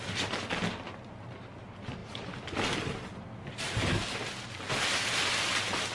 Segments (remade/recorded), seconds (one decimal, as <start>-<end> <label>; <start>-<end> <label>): 0.0-5.9 recorded